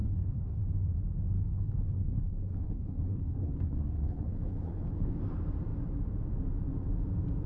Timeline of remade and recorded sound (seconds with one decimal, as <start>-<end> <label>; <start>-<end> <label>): 0.0-0.6 remade; 0.6-1.5 recorded; 1.5-5.2 remade; 5.2-7.5 recorded